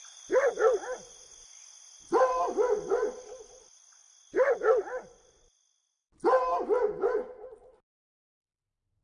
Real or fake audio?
real